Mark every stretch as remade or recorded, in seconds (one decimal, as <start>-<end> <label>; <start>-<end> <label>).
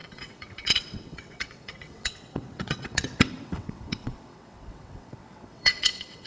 0.0-6.3 remade